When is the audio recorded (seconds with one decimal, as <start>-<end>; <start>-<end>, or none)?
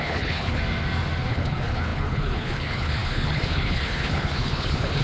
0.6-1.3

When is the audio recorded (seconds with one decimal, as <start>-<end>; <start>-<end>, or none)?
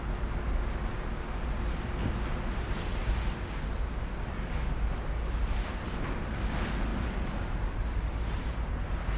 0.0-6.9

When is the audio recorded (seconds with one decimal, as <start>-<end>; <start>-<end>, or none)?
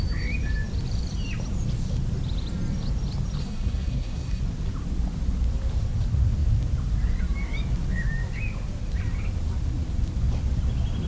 0.0-3.4; 4.4-11.1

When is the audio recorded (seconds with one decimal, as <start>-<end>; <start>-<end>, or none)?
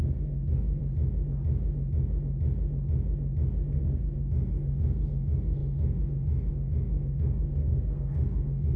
0.8-3.9